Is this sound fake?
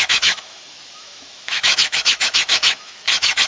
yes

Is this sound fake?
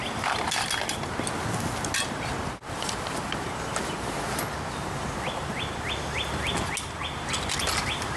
no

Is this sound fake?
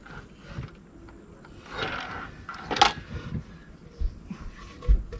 no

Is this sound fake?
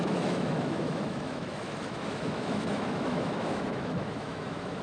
yes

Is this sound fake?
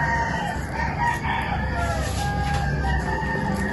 no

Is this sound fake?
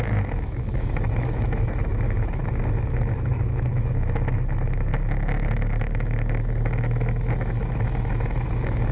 yes